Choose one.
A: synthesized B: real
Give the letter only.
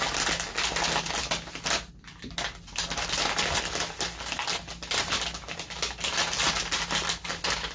B